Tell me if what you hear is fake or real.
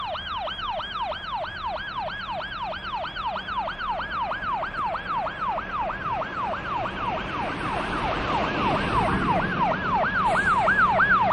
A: real